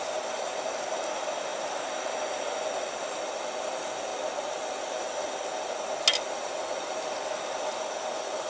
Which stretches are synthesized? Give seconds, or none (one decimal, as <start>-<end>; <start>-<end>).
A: none